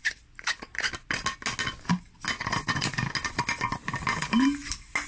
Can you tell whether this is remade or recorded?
recorded